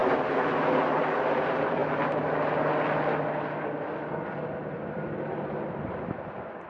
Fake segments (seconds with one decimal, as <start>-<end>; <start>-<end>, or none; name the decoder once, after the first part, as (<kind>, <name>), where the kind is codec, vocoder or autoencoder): 0.6-1.8 (vocoder, BigVGAN v2); 5.8-6.7